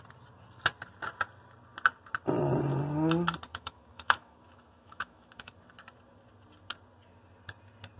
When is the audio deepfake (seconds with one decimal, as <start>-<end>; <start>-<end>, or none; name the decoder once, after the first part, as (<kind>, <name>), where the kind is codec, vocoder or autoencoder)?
3.5-5.5 (autoencoder, DAC-VAE)